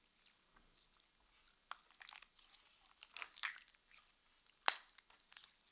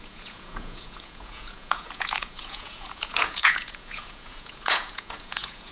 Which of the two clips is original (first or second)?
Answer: first